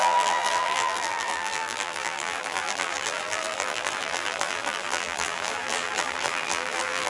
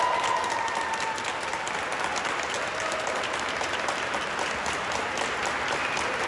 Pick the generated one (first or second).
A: first